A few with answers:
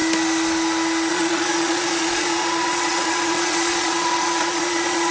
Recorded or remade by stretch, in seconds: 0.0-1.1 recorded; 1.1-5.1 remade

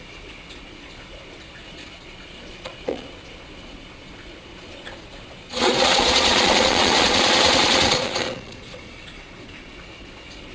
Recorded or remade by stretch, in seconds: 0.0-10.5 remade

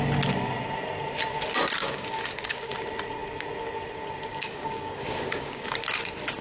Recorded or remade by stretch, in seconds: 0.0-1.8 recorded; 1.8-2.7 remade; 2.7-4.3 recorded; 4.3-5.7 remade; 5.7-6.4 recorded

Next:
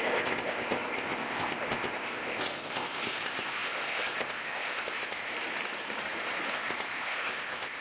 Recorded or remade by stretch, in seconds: 0.0-5.3 remade; 5.3-6.5 recorded; 6.5-7.8 remade

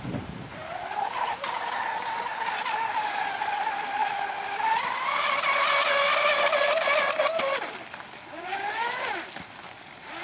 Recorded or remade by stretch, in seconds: 0.0-10.2 recorded

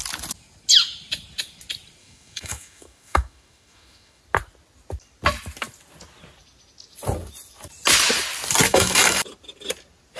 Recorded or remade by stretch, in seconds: 0.0-2.0 recorded; 2.0-4.2 remade; 4.2-8.7 recorded; 8.7-9.2 remade; 9.2-10.2 recorded